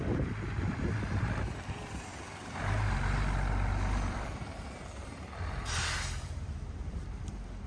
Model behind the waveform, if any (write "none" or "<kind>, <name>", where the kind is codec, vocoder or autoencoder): vocoder, BigVGAN v2